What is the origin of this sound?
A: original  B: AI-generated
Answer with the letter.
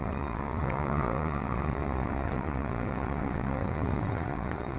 B